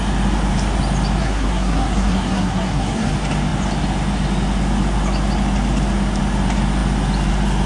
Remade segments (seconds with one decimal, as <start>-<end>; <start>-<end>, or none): 1.2-3.1